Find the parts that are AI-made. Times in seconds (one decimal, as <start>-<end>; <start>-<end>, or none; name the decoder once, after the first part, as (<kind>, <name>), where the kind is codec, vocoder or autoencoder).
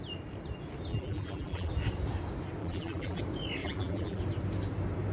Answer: 0.9-1.7 (vocoder, BigVGAN v2); 2.6-3.2; 3.6-4.2